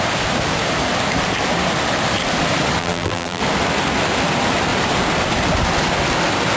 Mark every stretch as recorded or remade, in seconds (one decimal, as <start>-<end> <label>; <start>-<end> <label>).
0.0-2.8 recorded; 2.8-3.4 remade; 3.4-6.6 recorded